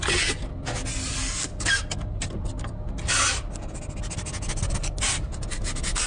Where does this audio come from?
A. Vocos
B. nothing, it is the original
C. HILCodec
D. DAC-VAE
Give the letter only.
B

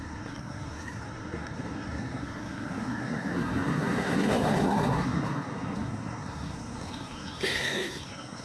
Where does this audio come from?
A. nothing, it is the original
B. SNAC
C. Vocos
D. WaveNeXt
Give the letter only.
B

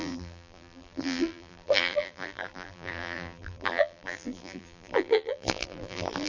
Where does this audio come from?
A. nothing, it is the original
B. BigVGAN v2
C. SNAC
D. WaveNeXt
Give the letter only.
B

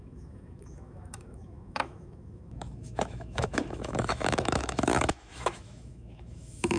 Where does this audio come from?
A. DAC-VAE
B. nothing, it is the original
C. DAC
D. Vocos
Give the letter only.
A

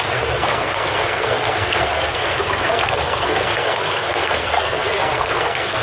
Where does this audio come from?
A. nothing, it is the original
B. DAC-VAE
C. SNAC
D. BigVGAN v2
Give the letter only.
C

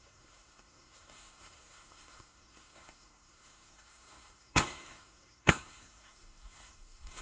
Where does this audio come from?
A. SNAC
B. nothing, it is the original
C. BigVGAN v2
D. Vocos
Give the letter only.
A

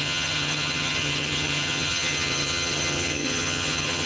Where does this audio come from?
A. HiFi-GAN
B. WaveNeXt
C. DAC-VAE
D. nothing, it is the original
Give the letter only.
A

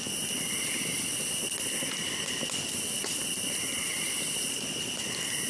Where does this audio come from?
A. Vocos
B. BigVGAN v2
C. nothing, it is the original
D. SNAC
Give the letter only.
C